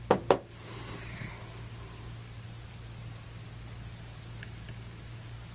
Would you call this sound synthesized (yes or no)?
no